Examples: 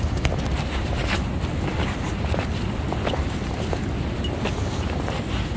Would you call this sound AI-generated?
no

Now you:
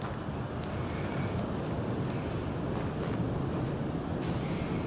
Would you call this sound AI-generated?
no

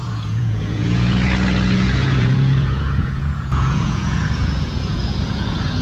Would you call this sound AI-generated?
yes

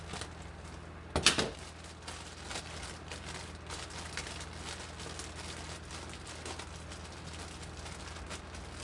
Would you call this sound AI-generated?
no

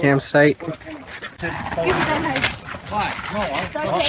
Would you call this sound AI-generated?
no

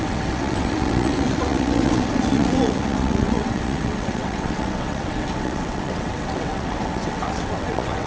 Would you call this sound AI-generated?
yes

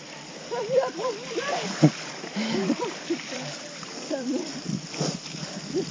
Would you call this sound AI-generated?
yes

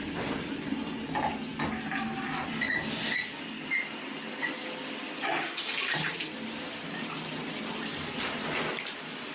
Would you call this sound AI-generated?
no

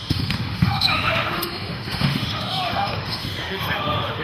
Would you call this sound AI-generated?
yes